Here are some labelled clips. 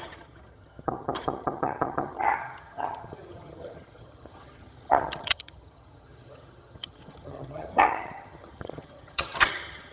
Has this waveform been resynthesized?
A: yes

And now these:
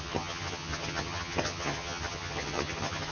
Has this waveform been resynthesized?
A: yes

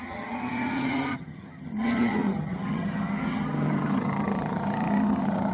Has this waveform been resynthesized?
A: yes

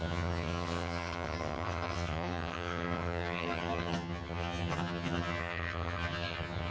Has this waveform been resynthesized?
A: yes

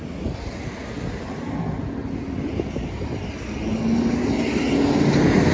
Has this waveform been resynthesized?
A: no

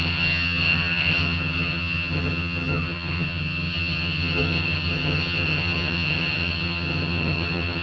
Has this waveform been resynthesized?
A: yes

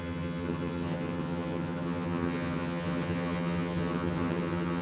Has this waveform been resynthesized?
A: yes